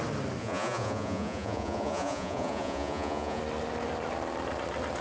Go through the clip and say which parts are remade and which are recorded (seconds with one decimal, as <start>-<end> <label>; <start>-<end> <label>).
0.0-0.4 recorded; 0.4-3.4 remade; 3.4-5.0 recorded